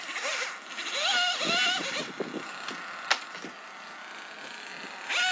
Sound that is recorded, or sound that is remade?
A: recorded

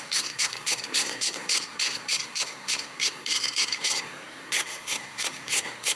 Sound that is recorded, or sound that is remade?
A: remade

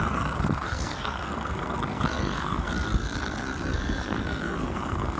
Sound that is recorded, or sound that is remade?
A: remade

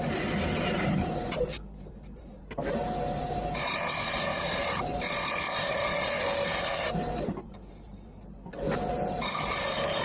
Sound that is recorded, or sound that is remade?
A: recorded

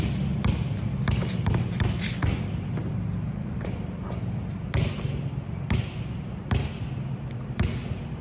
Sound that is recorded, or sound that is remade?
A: recorded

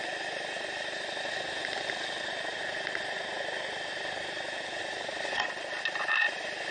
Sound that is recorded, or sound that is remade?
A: recorded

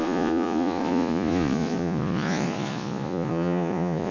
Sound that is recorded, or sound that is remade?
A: remade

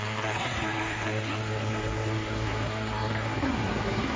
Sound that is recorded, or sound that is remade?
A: remade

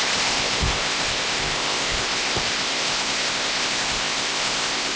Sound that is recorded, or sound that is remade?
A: remade